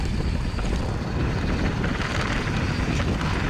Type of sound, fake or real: real